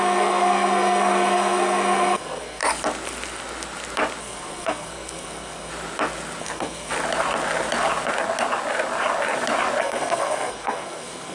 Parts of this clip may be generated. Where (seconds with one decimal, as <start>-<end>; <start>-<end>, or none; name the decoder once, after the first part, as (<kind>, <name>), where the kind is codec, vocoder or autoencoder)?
0.0-2.6 (codec, SNAC); 4.2-5.7; 6.4-6.9; 9.8-11.3